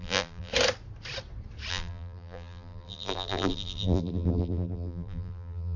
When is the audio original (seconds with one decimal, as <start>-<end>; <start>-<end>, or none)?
0.5-1.7